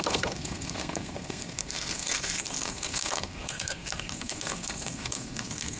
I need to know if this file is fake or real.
fake